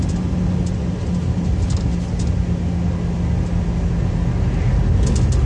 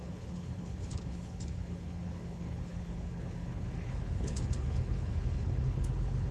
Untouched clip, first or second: first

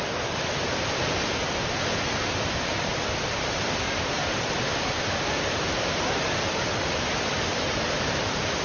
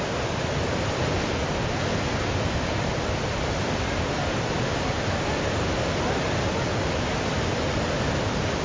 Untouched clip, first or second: second